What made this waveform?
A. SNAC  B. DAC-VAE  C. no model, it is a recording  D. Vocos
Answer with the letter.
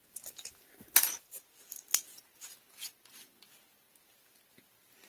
C